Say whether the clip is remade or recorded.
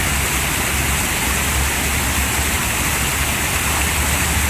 recorded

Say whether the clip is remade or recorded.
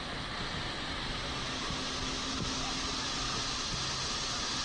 recorded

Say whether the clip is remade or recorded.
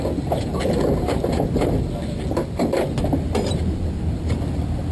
recorded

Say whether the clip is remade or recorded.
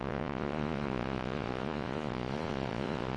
remade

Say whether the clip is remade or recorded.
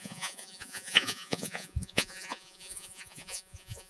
remade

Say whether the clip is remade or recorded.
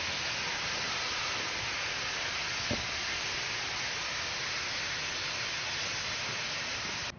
recorded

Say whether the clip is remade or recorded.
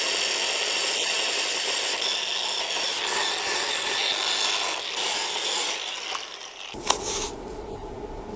recorded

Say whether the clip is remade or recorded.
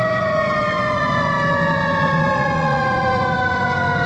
remade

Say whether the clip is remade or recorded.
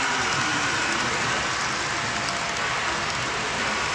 recorded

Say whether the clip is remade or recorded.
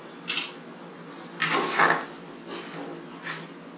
recorded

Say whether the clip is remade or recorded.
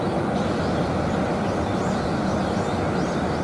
recorded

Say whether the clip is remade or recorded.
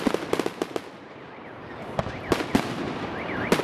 recorded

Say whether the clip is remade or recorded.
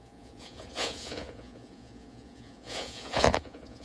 remade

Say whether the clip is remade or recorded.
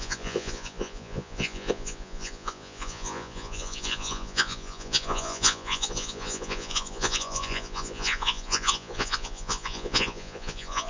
remade